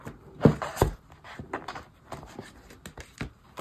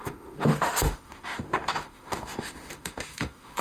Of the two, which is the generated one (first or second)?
second